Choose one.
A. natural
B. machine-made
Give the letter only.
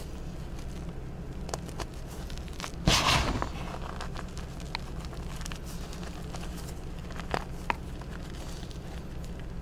A